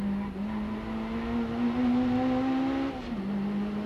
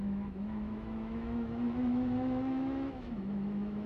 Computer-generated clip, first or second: second